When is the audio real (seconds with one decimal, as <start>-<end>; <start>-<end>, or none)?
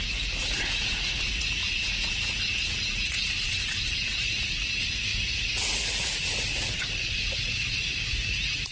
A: none